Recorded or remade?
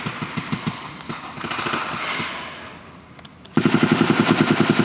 recorded